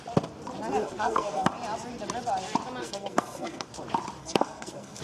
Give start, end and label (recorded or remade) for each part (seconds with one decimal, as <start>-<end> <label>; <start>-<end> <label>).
0.0-0.8 recorded; 0.8-1.5 remade; 1.5-2.8 recorded; 2.8-3.7 remade; 3.7-4.2 recorded; 4.2-5.0 remade